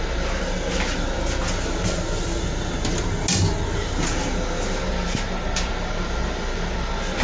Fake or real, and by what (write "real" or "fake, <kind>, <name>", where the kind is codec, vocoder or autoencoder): real